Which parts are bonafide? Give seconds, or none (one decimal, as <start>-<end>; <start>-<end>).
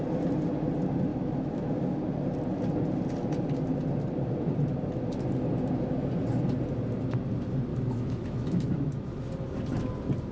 0.0-1.1; 1.7-7.7; 9.3-10.3